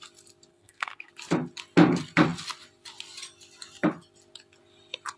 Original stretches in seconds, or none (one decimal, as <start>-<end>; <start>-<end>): 0.0-0.5; 1.1-5.2